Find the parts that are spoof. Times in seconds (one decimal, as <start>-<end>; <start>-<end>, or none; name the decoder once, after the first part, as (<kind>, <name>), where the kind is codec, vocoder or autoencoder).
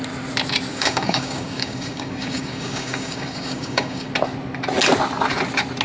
0.7-4.1 (codec, DAC)